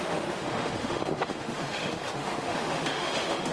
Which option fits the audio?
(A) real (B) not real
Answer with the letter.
B